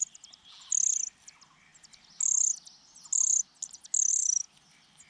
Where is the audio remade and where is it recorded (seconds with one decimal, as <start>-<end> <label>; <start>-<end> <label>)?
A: 0.0-5.1 recorded